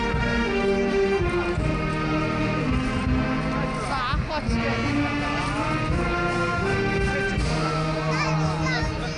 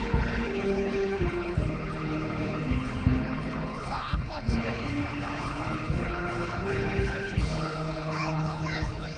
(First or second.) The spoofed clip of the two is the second